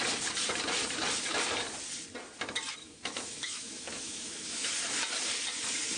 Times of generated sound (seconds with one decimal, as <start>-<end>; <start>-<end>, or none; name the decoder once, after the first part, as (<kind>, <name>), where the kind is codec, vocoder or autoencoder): 2.8-4.7 (autoencoder, DAC-VAE)